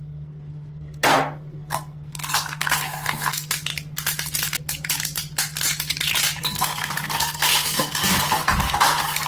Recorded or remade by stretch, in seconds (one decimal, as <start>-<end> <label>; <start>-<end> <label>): 0.0-3.7 remade; 3.7-6.4 recorded; 6.4-9.3 remade